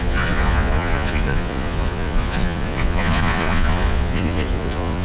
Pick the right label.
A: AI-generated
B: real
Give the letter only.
A